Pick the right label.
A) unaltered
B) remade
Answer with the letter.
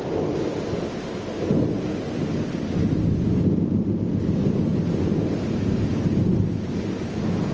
A